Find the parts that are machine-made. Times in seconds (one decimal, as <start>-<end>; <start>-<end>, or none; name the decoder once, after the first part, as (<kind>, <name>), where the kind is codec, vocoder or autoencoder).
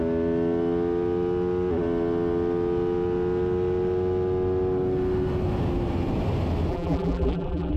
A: 6.7-7.8 (vocoder, BigVGAN v2)